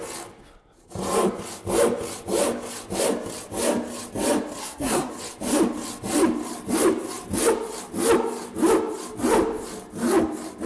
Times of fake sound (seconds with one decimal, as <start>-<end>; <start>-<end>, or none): 4.6-5.1

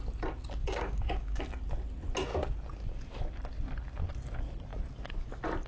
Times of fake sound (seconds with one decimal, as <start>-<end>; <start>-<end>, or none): 0.6-1.4